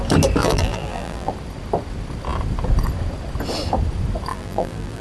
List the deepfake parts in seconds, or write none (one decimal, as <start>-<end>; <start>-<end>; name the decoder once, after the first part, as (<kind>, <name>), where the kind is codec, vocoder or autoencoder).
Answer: 0.4-1.3 (vocoder, BigVGAN v2); 4.3-5.0